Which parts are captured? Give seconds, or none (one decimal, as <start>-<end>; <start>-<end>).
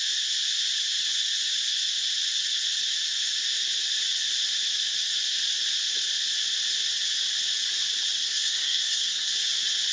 0.0-8.2; 9.3-9.9